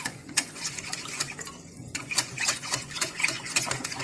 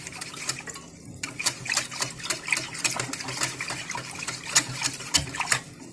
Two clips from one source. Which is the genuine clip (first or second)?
second